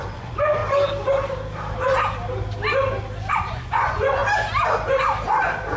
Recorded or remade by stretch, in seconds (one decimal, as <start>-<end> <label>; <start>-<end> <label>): 0.0-0.6 remade; 0.6-3.3 recorded; 3.3-4.2 remade; 4.2-5.8 recorded